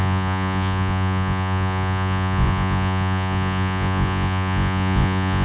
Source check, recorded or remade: remade